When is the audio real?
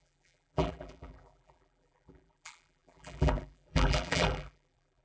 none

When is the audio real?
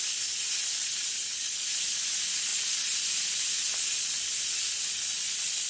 0.0-0.6; 1.8-5.7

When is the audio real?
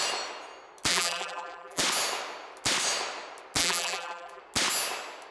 0.0-0.9; 1.8-3.6; 4.4-5.3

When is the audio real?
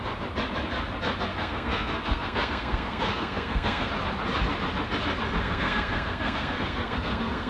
0.0-1.3; 3.9-5.4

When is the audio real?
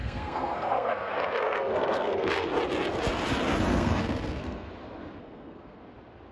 2.5-3.7; 4.7-5.2; 5.8-6.3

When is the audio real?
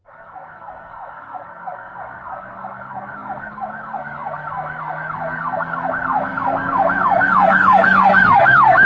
none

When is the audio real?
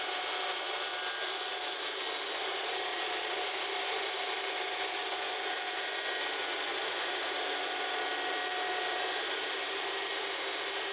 0.0-2.9; 3.4-10.9